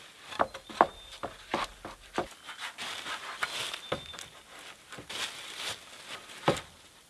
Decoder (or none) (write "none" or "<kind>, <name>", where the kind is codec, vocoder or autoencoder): none